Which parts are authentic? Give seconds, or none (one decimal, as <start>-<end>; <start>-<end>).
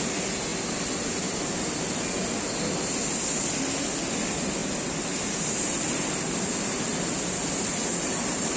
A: 0.0-8.6